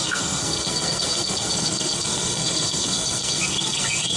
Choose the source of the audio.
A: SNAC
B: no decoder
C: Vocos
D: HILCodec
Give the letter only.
A